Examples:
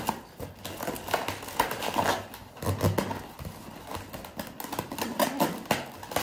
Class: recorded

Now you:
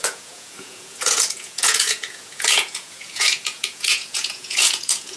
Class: remade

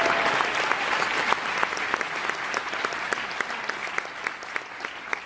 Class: recorded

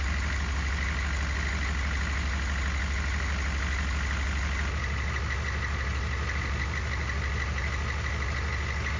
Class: recorded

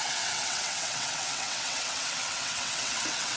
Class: remade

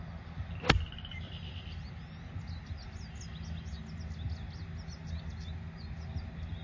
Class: recorded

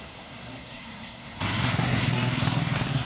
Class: remade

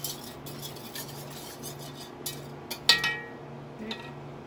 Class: recorded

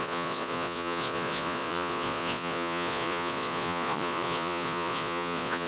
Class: remade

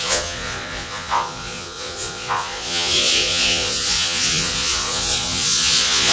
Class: remade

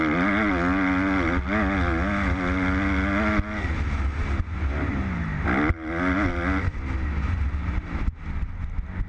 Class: recorded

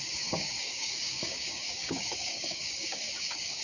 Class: remade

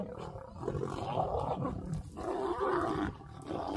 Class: recorded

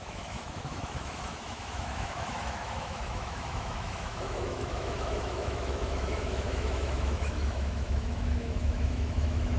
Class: remade